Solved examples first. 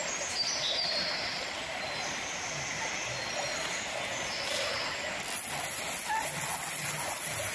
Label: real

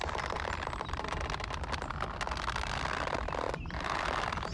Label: real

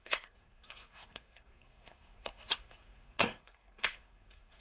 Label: fake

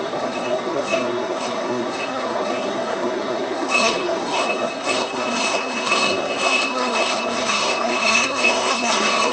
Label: fake